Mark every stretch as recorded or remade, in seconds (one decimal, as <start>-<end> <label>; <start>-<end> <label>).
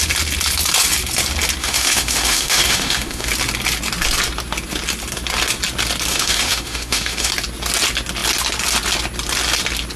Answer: 0.0-1.6 recorded; 1.6-3.3 remade; 3.3-6.1 recorded; 6.1-7.3 remade; 7.3-10.0 recorded